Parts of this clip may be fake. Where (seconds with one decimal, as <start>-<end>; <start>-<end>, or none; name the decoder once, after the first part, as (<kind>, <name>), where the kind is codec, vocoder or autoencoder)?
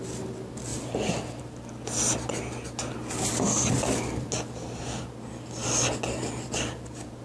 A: none